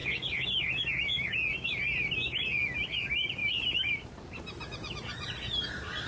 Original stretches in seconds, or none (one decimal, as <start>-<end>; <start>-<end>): 0.0-3.4